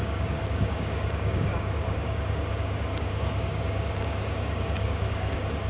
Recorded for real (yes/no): no